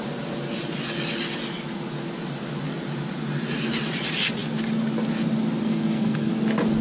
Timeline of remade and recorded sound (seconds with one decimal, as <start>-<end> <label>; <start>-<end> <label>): 0.0-5.6 recorded; 5.6-6.3 remade; 6.3-6.8 recorded